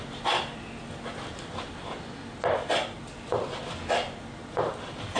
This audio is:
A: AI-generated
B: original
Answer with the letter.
A